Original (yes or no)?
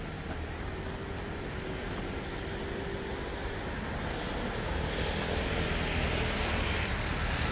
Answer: yes